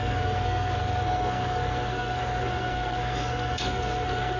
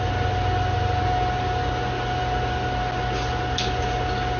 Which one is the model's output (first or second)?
first